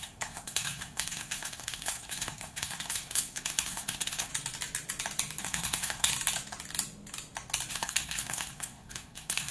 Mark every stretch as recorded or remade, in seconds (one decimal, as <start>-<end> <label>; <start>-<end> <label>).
0.0-4.3 remade; 4.3-5.4 recorded; 5.4-6.1 remade; 6.1-7.7 recorded; 7.7-9.5 remade